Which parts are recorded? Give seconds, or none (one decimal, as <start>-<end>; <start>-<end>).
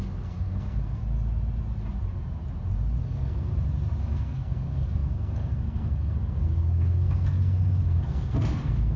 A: 1.0-3.0; 3.5-4.0